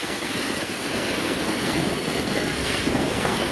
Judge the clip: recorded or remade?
remade